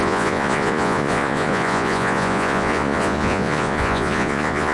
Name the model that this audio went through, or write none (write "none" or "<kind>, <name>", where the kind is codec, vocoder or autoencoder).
vocoder, Vocos